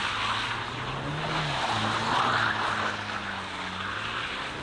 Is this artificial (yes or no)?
no